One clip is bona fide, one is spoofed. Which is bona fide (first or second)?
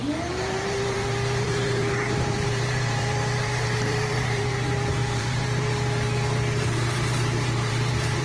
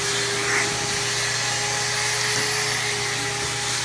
second